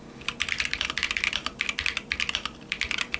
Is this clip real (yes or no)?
yes